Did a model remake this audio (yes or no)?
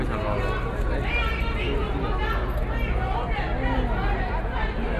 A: no